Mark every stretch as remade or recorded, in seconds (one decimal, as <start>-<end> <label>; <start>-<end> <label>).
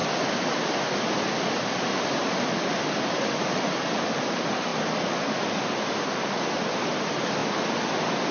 0.0-8.3 recorded